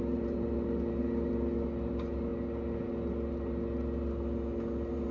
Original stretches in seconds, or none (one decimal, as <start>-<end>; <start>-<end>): 0.0-5.1